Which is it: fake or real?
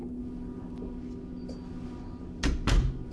real